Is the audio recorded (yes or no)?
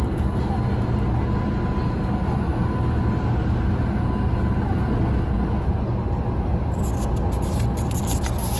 yes